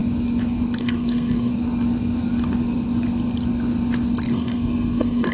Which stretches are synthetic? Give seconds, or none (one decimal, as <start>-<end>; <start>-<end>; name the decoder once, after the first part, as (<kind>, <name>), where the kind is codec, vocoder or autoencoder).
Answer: 0.8-1.5 (codec, SNAC); 4.3-5.3